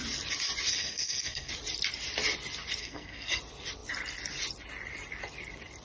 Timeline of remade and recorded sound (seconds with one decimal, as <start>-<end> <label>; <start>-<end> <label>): 0.0-0.7 recorded; 0.7-1.5 remade; 1.5-2.8 recorded; 2.8-3.4 remade; 3.4-5.8 recorded

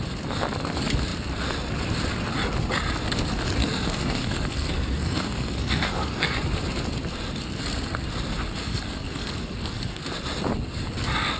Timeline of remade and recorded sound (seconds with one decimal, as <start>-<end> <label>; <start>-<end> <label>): 0.0-3.6 recorded; 3.6-6.4 remade; 6.4-8.6 recorded; 8.6-10.0 remade; 10.0-11.4 recorded

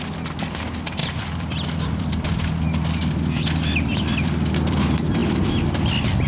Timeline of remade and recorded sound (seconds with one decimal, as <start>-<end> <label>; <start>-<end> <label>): 0.0-1.0 recorded; 1.0-4.8 remade; 4.8-6.3 recorded

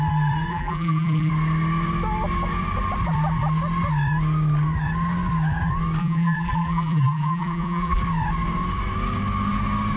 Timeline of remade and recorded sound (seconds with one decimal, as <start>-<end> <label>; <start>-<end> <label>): 0.0-0.5 recorded; 0.5-1.3 remade; 1.3-6.0 recorded; 6.0-8.0 remade; 8.0-10.0 recorded

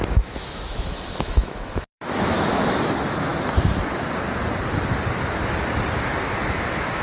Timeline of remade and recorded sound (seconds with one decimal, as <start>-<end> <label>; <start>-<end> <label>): 0.0-3.3 remade; 3.3-6.4 recorded; 6.4-7.0 remade

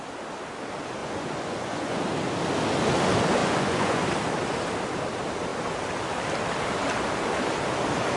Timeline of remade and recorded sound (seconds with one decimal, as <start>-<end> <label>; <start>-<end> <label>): 0.0-1.0 recorded; 1.0-2.0 remade; 2.0-3.4 recorded; 3.4-4.0 remade; 4.0-8.2 recorded

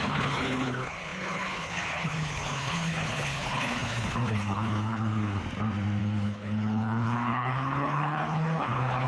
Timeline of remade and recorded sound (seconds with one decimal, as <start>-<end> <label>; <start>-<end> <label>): 0.0-5.4 remade; 5.4-6.0 recorded; 6.0-9.1 remade

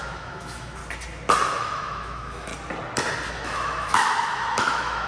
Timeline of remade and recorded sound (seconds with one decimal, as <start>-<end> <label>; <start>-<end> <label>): 0.0-0.8 remade; 0.8-1.6 recorded; 1.6-2.5 remade; 2.5-3.3 recorded; 3.3-5.1 remade